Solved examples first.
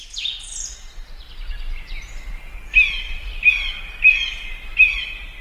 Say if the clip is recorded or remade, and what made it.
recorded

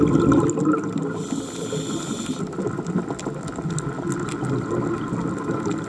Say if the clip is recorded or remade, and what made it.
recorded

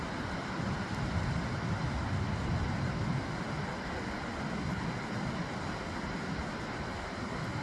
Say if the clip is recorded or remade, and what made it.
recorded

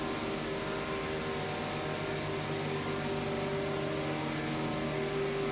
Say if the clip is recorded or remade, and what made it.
recorded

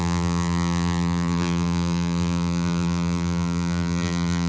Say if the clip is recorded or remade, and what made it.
remade, vocoder, BigVGAN v2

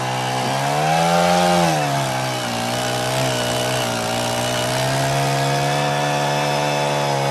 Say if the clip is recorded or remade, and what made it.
recorded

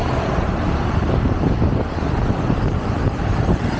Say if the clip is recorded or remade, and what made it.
remade, vocoder, BigVGAN v2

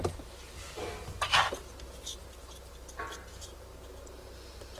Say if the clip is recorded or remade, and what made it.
recorded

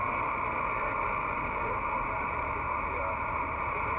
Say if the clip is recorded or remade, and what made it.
recorded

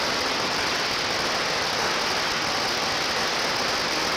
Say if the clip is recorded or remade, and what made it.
recorded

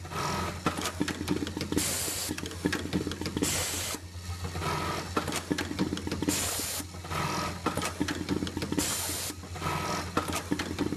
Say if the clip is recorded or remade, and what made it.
recorded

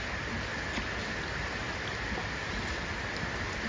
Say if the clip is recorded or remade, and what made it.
recorded